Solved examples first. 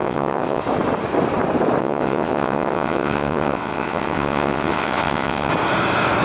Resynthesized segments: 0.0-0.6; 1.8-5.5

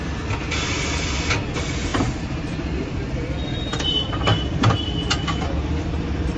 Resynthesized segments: none

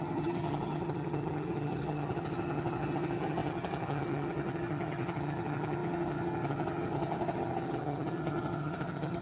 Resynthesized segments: 0.0-9.2

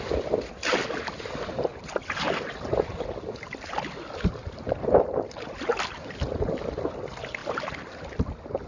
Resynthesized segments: none

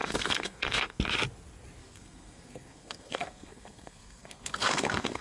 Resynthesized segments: 0.0-1.0; 1.8-5.2

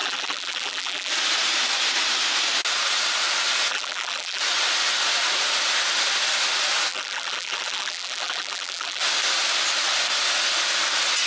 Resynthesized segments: 0.0-1.1; 3.7-4.4; 6.9-9.0

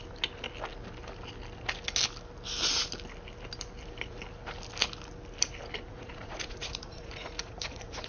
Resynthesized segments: 5.9-8.1

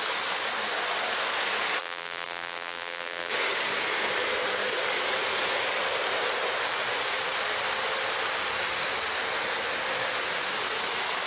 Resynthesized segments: 1.8-3.3